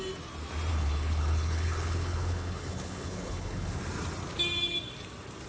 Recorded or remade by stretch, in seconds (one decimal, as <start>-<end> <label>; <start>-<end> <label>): 0.0-0.7 recorded; 0.7-3.8 remade; 3.8-5.5 recorded